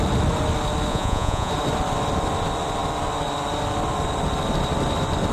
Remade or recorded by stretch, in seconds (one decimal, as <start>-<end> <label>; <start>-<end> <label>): 0.0-0.9 recorded; 0.9-1.5 remade; 1.5-5.3 recorded